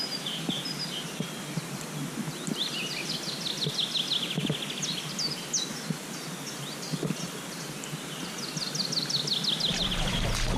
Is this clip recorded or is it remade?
recorded